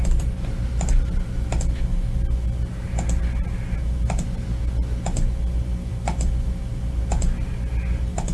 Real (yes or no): yes